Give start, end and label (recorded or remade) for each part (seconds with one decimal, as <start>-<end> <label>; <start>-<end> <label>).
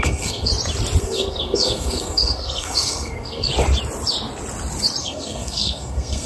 0.0-0.5 remade; 0.5-1.0 recorded; 1.0-3.5 remade; 3.5-5.0 recorded; 5.0-6.3 remade